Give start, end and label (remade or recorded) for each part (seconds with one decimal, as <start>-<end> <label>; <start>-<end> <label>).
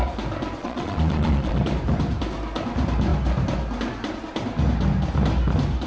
0.0-0.6 recorded; 0.6-1.6 remade; 1.6-5.9 recorded